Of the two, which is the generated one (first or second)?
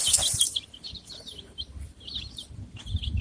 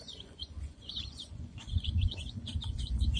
second